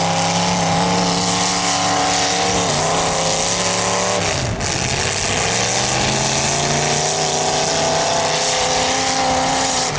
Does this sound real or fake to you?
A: real